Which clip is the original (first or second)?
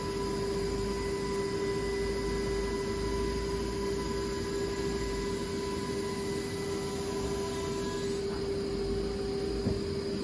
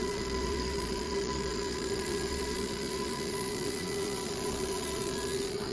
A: first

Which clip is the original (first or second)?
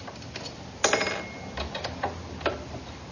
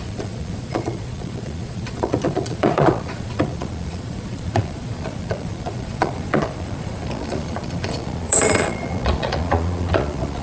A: first